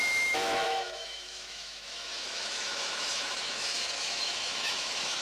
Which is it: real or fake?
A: fake